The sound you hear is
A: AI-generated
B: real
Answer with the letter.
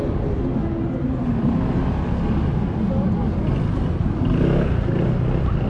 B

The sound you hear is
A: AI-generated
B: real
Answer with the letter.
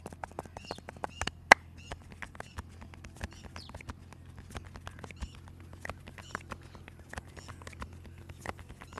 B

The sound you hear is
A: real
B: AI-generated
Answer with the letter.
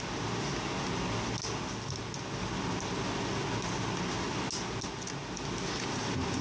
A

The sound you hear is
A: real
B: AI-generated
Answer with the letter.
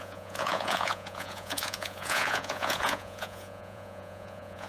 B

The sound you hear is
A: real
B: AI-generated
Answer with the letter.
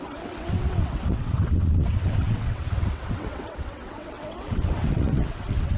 B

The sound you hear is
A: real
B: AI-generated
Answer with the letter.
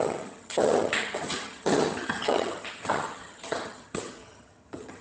B